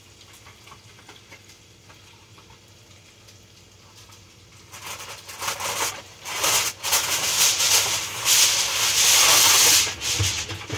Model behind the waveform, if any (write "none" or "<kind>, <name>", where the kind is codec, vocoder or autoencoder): none